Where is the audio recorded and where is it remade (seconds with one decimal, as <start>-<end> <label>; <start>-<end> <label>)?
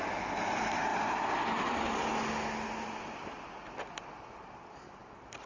0.0-5.5 recorded